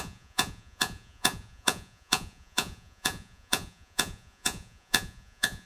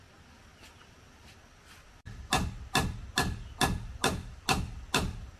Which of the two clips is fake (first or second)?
first